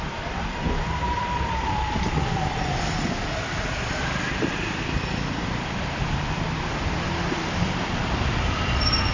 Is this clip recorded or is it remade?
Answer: remade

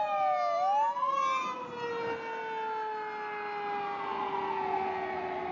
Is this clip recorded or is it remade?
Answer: recorded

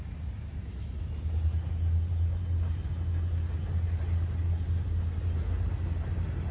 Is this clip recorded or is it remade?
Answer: recorded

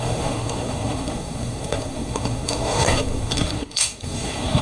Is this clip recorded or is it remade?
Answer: remade